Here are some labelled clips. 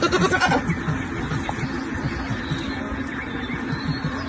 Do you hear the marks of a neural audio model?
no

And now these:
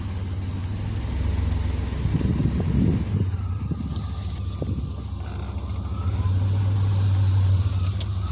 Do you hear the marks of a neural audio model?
no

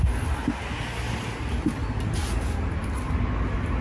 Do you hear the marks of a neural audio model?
no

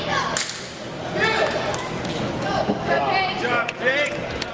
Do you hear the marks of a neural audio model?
no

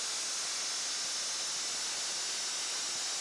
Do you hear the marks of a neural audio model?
no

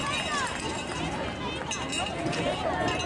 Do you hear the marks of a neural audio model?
no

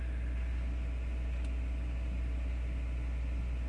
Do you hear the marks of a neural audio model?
no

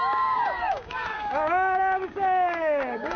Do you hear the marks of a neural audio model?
yes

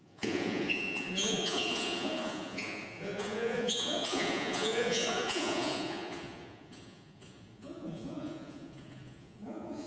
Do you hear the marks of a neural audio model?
yes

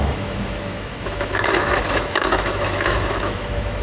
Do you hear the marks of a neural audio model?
yes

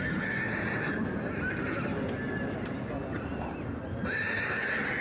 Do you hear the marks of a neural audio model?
no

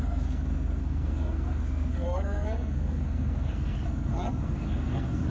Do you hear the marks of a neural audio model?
yes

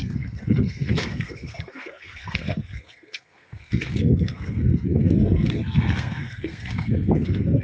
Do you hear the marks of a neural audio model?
yes